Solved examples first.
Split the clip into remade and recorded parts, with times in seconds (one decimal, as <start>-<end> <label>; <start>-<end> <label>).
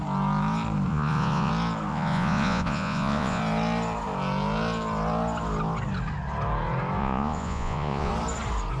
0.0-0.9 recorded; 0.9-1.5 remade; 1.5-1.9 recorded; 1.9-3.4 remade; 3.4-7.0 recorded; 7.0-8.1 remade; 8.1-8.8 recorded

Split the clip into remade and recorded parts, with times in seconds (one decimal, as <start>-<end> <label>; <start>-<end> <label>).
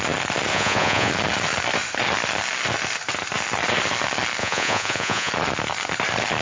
0.0-0.5 recorded; 0.5-1.1 remade; 1.1-4.4 recorded; 4.4-5.3 remade; 5.3-6.4 recorded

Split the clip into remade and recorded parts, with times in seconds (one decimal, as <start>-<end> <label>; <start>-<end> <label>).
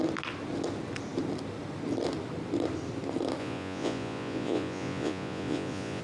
0.0-3.4 recorded; 3.4-6.0 remade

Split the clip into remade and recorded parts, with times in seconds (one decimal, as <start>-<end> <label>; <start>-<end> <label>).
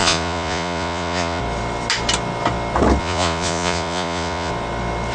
0.0-1.4 remade; 1.4-3.0 recorded; 3.0-4.5 remade; 4.5-5.1 recorded